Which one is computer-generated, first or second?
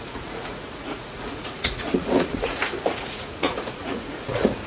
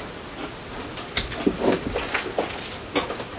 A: first